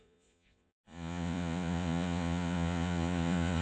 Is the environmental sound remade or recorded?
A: remade